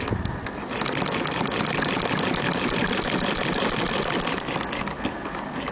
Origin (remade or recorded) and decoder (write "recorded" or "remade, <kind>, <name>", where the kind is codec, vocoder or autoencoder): recorded